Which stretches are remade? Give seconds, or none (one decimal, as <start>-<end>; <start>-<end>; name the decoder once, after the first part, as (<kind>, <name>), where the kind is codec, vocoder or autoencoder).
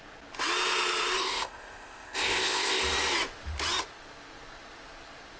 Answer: 1.2-2.8 (codec, ZipCodec)